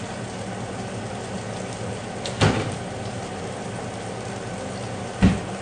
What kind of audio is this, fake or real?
real